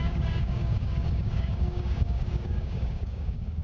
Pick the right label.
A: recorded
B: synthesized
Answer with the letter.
B